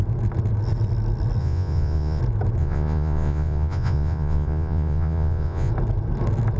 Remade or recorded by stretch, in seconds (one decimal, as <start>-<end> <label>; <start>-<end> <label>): 0.0-1.4 recorded; 1.4-2.2 remade; 2.2-2.6 recorded; 2.6-5.7 remade; 5.7-6.6 recorded